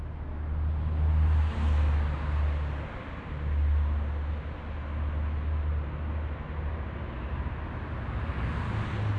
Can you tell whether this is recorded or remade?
recorded